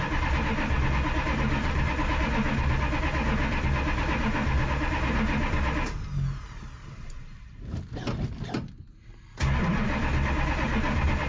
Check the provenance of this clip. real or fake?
real